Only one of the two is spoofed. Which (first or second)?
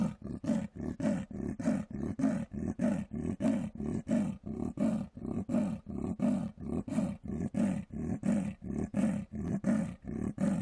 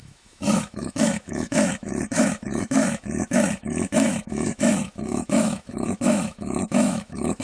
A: second